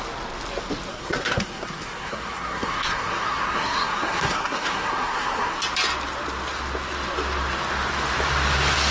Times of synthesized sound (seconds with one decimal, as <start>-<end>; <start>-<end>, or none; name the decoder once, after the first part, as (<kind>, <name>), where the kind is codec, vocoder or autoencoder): 0.9-5.6 (codec, SNAC)